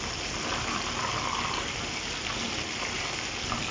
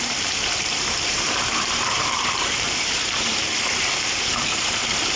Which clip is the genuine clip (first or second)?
first